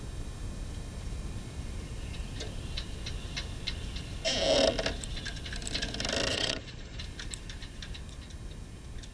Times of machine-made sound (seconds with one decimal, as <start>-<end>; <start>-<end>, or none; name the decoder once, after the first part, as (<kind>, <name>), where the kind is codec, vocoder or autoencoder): 6.3-7.0 (vocoder, Vocos)